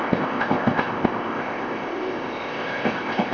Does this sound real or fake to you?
fake